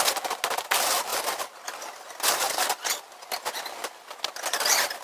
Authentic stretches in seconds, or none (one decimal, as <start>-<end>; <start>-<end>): 0.0-5.0